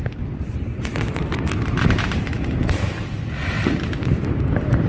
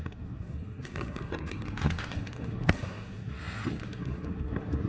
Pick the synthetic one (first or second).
second